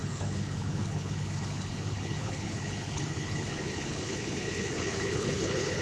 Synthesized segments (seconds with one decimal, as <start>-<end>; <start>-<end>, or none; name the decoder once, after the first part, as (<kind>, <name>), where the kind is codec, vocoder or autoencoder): 0.0-5.8 (codec, HILCodec)